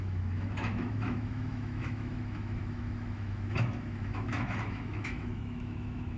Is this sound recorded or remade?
remade